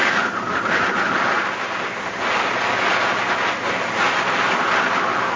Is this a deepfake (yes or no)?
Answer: no